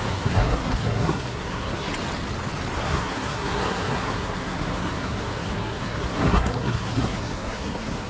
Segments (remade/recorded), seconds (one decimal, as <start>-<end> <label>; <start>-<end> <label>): 0.0-1.9 remade; 1.9-2.8 recorded; 2.8-8.1 remade